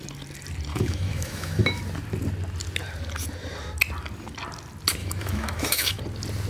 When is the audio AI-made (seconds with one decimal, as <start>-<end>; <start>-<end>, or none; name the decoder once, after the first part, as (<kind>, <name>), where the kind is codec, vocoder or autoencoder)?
0.7-1.8 (autoencoder, DAC-VAE); 5.0-6.0